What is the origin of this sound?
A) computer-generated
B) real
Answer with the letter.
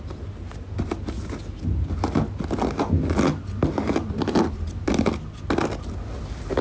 B